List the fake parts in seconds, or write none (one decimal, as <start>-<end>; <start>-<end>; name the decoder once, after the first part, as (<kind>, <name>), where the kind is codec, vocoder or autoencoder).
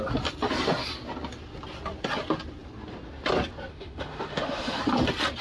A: 3.7-4.8 (autoencoder, DAC-VAE)